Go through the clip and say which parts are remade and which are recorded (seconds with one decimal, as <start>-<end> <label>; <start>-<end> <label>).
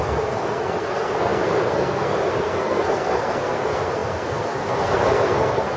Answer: 0.0-5.8 remade